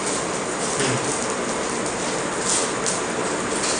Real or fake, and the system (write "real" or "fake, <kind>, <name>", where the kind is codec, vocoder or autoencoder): real